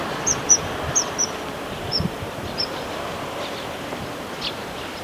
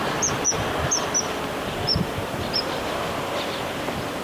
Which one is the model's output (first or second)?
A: first